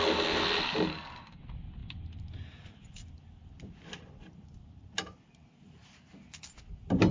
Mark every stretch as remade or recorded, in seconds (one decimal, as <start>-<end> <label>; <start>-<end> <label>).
0.0-0.9 recorded; 0.9-1.4 remade; 1.4-7.1 recorded